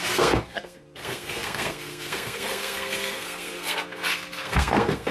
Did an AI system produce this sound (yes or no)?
yes